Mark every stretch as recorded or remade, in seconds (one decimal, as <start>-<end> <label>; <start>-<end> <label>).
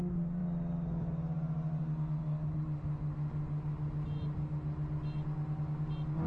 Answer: 0.0-6.3 recorded